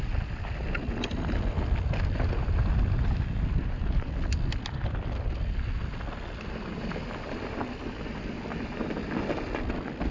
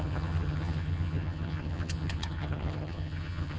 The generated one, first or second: second